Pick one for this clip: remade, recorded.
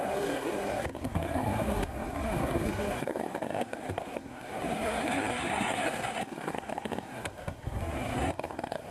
remade